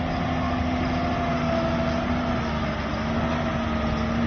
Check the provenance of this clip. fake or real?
real